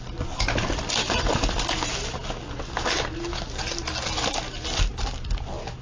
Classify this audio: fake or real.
real